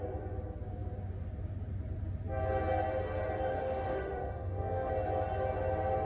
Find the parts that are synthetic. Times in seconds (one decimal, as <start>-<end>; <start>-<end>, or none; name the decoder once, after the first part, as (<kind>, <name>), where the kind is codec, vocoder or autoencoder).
3.5-4.9 (autoencoder, DAC-VAE)